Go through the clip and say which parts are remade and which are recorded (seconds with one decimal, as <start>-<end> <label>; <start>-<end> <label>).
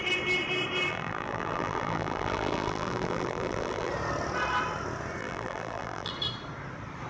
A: 0.0-0.9 recorded; 0.9-3.9 remade; 3.9-5.2 recorded; 5.2-6.1 remade; 6.1-7.1 recorded